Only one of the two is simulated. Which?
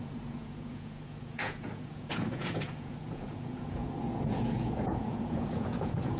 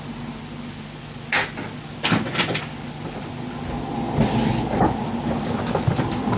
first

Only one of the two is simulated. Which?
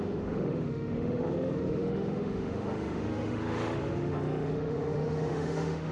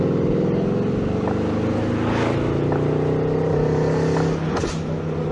first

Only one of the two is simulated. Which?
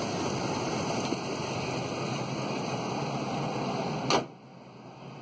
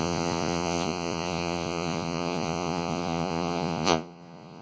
second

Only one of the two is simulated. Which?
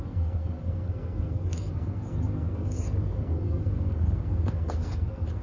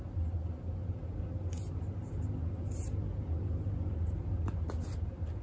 first